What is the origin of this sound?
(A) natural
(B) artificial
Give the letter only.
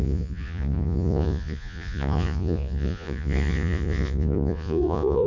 B